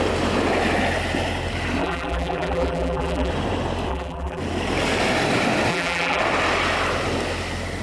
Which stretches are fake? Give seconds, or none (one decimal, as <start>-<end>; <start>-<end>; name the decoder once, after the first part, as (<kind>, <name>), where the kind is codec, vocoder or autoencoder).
1.8-3.3 (vocoder, BigVGAN v2); 3.9-4.4; 5.7-6.2